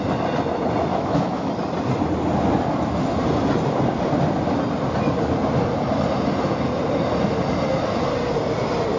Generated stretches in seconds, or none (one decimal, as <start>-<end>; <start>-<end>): 0.9-1.5